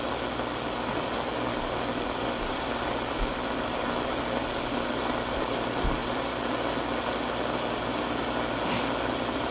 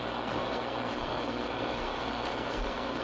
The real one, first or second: first